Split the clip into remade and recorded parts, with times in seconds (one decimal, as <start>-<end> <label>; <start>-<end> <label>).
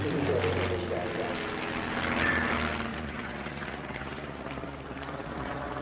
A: 0.0-2.9 recorded; 2.9-5.8 remade